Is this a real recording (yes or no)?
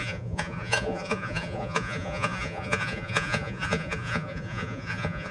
no